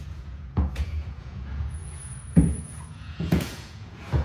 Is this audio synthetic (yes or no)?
yes